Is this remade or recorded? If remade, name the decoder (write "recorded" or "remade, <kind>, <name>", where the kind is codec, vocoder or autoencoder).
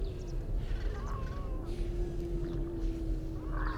recorded